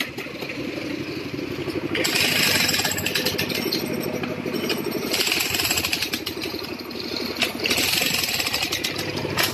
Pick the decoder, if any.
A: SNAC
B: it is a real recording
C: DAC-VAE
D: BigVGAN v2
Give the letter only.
B